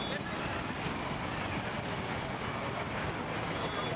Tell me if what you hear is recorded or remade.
recorded